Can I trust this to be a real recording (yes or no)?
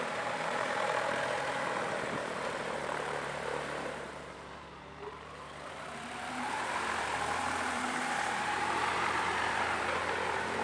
no